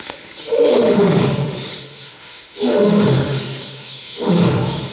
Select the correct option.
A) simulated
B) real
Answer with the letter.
A